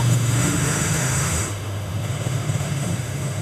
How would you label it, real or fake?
fake